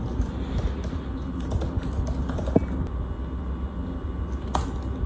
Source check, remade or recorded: recorded